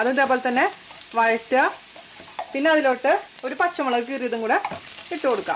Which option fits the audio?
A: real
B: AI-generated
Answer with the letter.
A